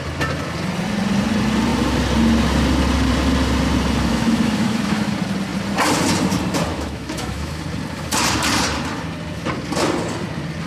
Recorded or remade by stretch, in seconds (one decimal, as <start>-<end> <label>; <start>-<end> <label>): 0.0-4.1 recorded; 4.1-5.1 remade; 5.1-6.7 recorded; 6.7-7.6 remade; 7.6-10.7 recorded